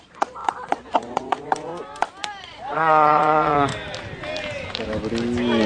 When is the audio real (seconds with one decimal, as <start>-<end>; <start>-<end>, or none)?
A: 1.7-2.4; 3.7-5.7